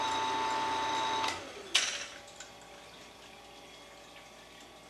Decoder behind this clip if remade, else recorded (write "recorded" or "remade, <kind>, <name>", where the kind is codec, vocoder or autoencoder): recorded